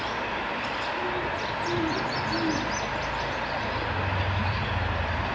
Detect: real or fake real